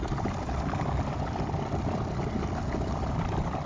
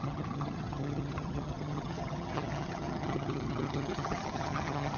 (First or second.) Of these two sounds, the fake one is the second